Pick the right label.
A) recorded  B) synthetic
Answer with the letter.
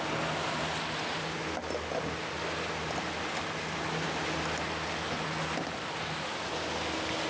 A